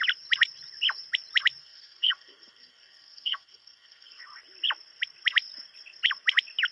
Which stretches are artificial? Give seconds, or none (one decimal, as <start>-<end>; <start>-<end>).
1.6-4.2